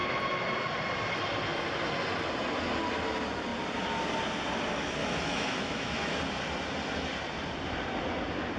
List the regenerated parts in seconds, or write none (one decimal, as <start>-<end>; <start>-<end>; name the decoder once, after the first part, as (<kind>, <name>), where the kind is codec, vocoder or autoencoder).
5.0-6.2 (autoencoder, DAC-VAE)